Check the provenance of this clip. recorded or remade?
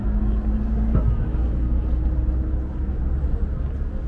recorded